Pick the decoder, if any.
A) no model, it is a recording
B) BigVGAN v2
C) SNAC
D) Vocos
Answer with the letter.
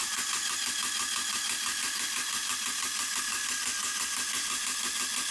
A